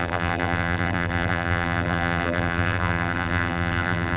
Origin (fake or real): fake